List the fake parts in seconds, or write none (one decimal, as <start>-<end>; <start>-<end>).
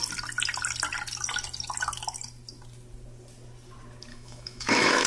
4.1-5.1